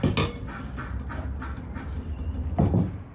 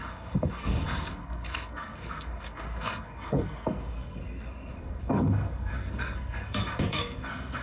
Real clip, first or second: first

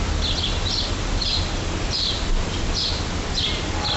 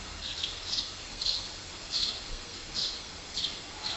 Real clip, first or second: first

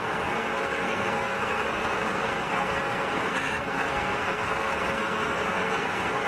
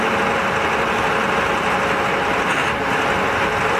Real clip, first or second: second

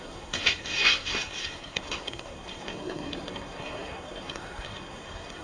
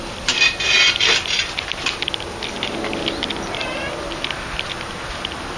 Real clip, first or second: second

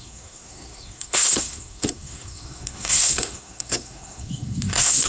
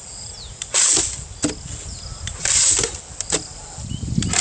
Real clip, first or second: second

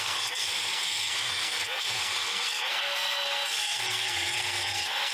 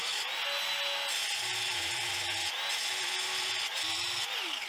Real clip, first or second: second